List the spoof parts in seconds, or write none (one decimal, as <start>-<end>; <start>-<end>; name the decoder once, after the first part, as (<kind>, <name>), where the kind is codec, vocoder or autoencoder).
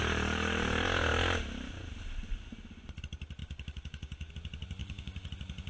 3.4-4.3 (codec, DAC); 4.8-5.3